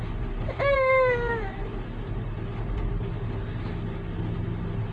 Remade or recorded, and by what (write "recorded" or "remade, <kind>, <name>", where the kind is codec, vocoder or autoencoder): recorded